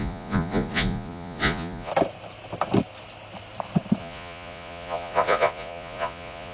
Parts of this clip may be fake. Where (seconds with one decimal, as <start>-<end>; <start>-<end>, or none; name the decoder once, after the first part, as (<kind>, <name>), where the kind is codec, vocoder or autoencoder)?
0.0-1.9 (vocoder, Vocos); 4.0-6.5